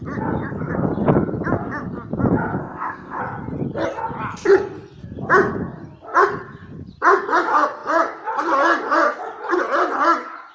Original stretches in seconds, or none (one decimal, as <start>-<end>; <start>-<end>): 0.0-2.6; 3.2-10.5